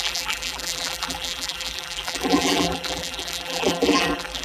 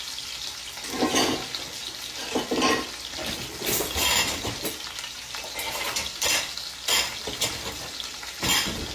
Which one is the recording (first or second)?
second